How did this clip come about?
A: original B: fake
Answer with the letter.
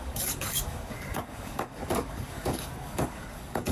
B